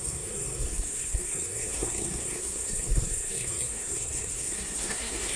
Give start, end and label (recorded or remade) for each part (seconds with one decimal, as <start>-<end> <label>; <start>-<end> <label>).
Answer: 0.0-5.4 remade

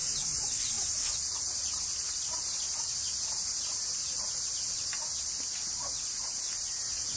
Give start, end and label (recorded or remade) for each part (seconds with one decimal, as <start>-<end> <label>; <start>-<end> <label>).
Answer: 0.0-7.2 recorded

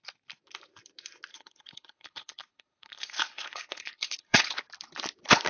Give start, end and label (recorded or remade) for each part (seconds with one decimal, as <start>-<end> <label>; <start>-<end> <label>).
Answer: 0.0-1.3 recorded; 1.3-4.6 remade; 4.6-5.5 recorded